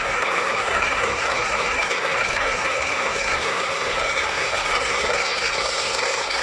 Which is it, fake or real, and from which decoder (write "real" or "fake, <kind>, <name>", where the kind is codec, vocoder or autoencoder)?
fake, codec, SNAC